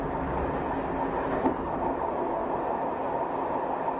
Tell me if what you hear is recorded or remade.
recorded